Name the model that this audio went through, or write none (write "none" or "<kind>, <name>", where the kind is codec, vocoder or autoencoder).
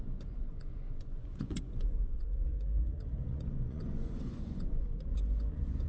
vocoder, Vocos